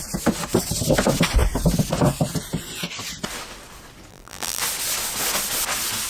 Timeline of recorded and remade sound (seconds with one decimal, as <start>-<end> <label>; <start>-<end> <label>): 0.0-4.1 recorded; 4.1-4.6 remade; 4.6-6.1 recorded